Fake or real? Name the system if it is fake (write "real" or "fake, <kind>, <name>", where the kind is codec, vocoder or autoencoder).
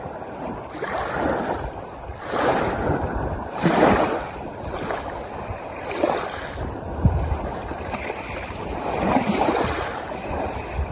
real